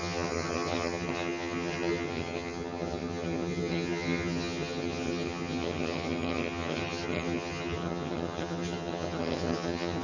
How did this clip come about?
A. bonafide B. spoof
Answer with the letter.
B